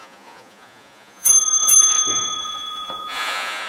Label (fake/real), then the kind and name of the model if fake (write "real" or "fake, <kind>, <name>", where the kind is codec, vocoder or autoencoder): fake, vocoder, Vocos